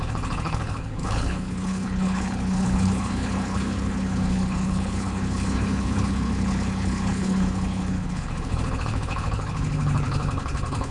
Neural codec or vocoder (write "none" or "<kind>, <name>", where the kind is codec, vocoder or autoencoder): codec, HILCodec